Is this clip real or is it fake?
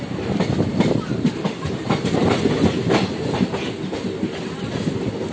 real